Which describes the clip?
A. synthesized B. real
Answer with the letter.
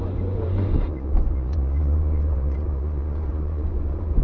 A